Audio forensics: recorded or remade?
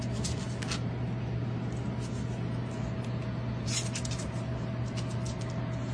recorded